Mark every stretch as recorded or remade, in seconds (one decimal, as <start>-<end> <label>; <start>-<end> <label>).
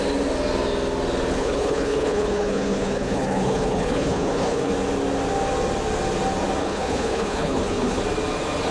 0.0-1.3 recorded; 1.3-4.7 remade; 4.7-6.6 recorded; 6.6-8.0 remade; 8.0-8.7 recorded